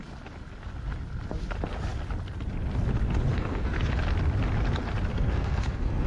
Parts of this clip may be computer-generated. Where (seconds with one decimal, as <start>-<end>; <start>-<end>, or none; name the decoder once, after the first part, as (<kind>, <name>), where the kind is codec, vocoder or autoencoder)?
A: 3.3-3.9 (codec, SNAC); 5.1-6.1